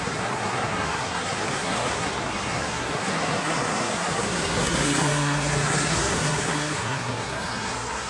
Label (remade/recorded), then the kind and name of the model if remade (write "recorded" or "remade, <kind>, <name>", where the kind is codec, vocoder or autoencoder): remade, codec, SNAC